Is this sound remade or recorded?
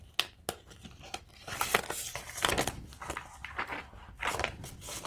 recorded